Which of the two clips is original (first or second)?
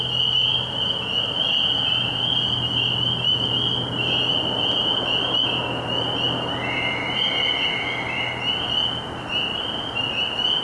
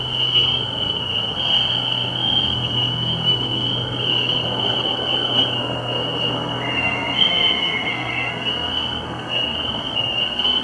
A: first